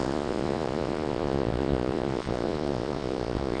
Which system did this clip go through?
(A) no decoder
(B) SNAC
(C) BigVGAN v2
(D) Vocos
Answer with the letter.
D